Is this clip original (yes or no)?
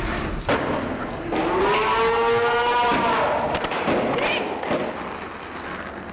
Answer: yes